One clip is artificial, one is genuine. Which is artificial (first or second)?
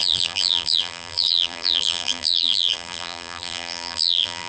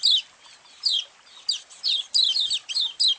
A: first